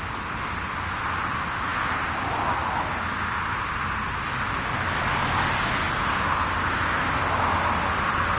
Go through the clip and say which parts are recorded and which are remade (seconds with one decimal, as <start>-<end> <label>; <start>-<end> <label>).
0.0-8.4 recorded